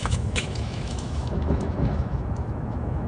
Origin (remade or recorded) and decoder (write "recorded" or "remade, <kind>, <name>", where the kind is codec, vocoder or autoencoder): remade, autoencoder, DAC-VAE